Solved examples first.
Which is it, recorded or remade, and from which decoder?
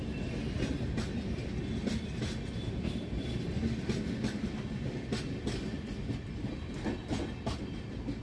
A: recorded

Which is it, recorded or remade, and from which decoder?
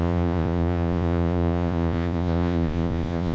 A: remade, vocoder, Vocos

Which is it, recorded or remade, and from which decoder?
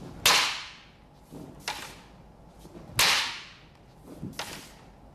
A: recorded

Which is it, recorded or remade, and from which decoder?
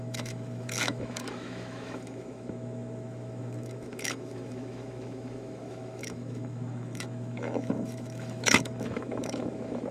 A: remade, autoencoder, DAC-VAE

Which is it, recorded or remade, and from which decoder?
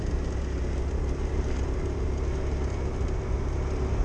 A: recorded